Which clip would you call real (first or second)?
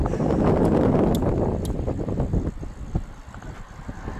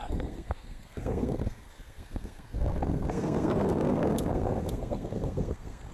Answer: first